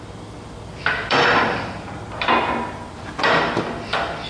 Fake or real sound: real